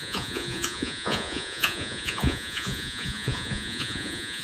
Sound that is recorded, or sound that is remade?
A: remade